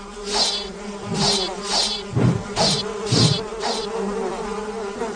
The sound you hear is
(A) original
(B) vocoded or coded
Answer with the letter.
B